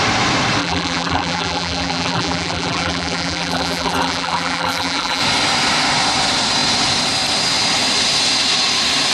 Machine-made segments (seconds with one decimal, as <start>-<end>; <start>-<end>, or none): 0.6-5.2